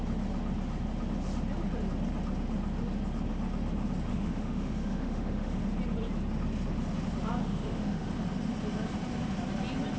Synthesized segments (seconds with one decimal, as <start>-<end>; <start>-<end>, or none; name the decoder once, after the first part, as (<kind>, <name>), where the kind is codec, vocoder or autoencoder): 4.1-5.6 (autoencoder, DAC-VAE); 7.4-8.1